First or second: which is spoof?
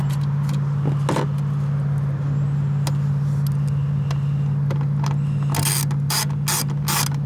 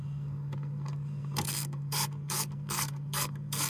second